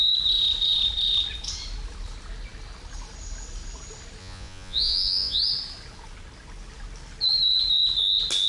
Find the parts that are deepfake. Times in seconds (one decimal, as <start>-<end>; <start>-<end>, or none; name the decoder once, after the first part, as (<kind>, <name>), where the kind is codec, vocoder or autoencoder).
4.2-5.4 (vocoder, Vocos)